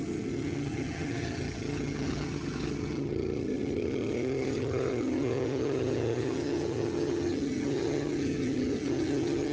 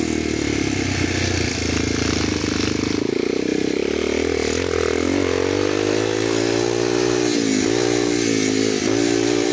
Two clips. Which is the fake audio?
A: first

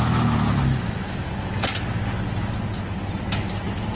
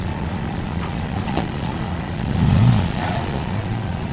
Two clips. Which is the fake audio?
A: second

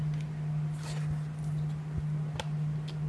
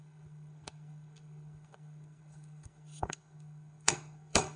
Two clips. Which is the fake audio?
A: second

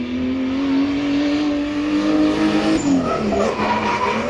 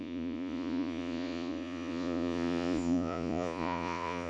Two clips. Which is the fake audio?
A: second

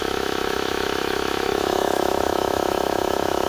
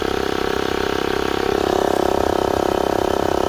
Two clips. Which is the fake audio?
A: first